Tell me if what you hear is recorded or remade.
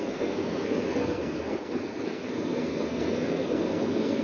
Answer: remade